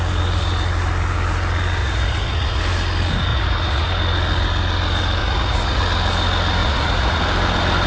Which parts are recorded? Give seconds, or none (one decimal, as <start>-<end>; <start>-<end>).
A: 0.0-1.8; 2.6-3.3; 3.9-5.2; 5.8-6.6; 7.2-7.9